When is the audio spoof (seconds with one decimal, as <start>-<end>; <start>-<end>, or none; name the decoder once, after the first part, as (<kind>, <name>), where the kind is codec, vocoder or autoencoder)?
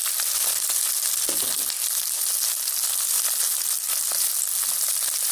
none